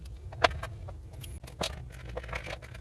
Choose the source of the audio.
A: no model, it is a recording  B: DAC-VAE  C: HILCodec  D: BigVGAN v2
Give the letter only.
A